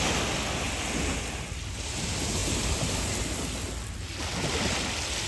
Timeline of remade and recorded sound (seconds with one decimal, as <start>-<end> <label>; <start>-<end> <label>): 0.0-5.3 recorded